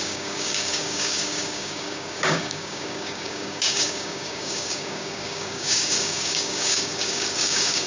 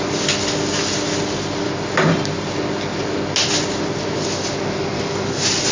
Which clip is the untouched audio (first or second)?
second